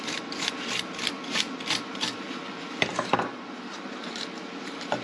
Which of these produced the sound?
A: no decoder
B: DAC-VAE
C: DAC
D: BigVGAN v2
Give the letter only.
D